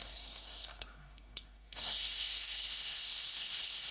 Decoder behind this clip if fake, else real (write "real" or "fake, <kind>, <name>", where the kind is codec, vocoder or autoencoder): fake, codec, SNAC